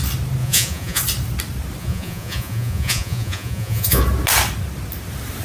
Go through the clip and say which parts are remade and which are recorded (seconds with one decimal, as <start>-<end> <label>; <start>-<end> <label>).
0.0-0.4 recorded; 0.4-1.0 remade; 1.0-1.8 recorded; 1.8-4.0 remade; 4.0-5.4 recorded